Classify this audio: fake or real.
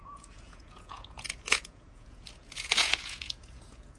fake